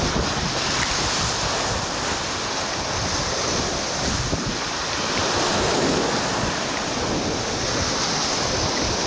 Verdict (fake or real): real